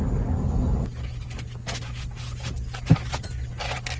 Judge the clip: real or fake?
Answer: real